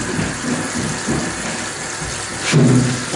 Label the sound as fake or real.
real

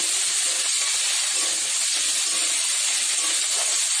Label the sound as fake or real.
fake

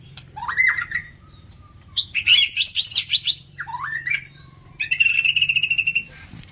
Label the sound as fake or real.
fake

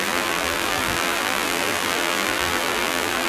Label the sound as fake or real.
fake